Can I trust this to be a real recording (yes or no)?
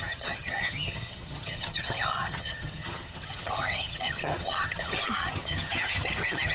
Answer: no